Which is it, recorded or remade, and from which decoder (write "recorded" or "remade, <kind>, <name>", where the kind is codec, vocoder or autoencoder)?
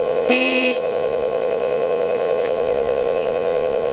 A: remade, vocoder, Vocos